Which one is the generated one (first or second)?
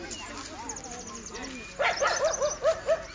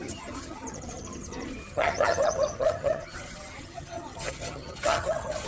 second